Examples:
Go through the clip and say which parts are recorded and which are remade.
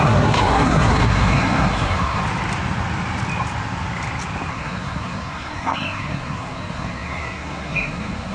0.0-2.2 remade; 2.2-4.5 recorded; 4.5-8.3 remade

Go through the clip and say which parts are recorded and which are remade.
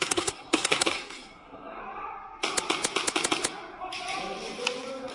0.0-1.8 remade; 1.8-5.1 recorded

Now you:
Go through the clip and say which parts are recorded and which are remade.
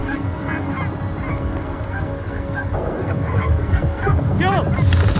0.0-0.7 remade; 0.7-1.3 recorded; 1.3-4.4 remade; 4.4-5.2 recorded